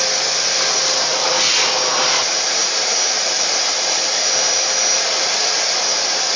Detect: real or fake real